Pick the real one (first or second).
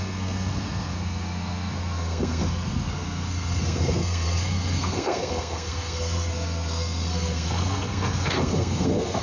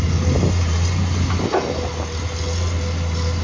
second